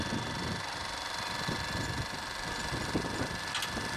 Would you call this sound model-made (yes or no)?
no